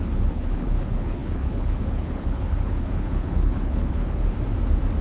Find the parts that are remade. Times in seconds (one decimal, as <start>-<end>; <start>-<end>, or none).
0.0-4.2